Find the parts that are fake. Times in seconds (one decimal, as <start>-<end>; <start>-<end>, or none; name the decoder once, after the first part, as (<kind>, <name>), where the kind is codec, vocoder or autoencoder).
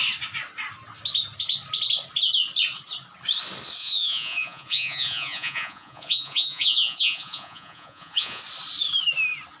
3.8-8.4 (vocoder, Vocos)